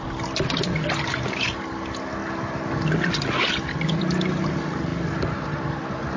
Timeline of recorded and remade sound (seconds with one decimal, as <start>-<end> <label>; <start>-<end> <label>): 0.0-6.2 recorded